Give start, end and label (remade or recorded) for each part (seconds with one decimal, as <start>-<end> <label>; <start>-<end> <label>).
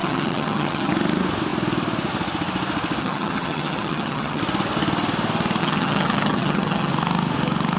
0.0-0.9 remade; 0.9-3.0 recorded; 3.0-4.4 remade; 4.4-5.6 recorded; 5.6-6.9 remade; 6.9-7.8 recorded